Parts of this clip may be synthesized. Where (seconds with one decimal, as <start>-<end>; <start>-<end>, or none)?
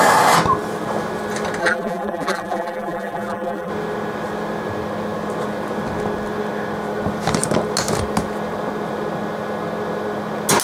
1.6-3.7